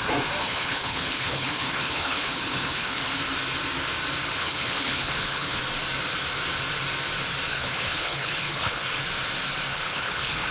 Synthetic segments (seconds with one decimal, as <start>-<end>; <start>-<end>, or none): 0.4-3.2; 4.4-5.6; 7.5-9.0; 9.7-10.5